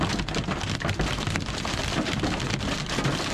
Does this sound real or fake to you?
real